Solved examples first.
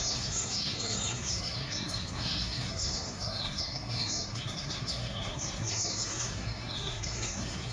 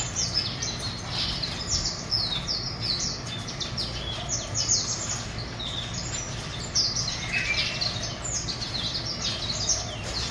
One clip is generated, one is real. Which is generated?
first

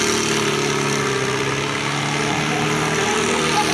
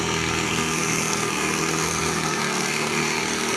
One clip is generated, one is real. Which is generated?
second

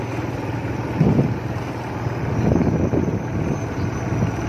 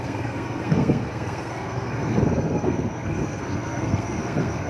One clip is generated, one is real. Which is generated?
second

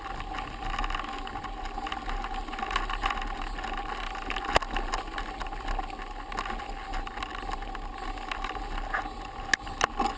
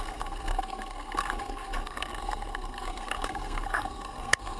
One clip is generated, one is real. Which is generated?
second